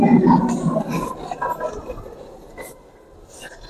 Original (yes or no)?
yes